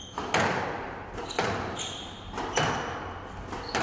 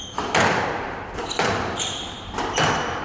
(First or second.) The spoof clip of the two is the second